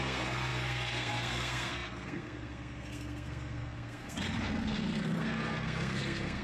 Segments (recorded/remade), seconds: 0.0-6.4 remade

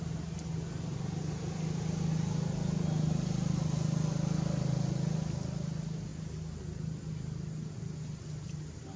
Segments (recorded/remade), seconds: 0.0-9.0 recorded

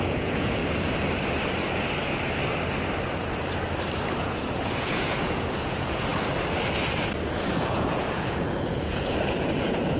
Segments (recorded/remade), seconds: 0.0-0.6 remade; 0.6-4.2 recorded; 4.2-6.1 remade; 6.1-7.6 recorded; 7.6-10.0 remade

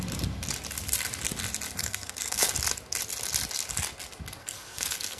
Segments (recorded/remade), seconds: 0.0-1.8 recorded; 1.8-2.5 remade; 2.5-4.4 recorded; 4.4-5.2 remade

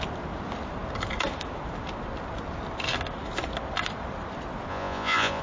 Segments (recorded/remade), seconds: 0.0-4.7 recorded; 4.7-5.4 remade

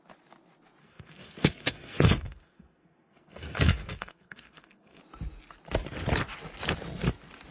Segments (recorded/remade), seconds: 0.0-0.8 recorded; 0.8-5.0 remade; 5.0-7.5 recorded

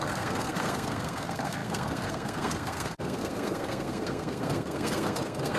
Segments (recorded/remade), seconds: 0.0-5.6 remade